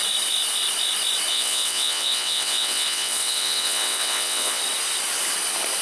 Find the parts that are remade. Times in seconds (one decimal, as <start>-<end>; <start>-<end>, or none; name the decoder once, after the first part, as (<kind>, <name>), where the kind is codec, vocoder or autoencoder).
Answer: 1.3-4.6 (vocoder, WaveNeXt)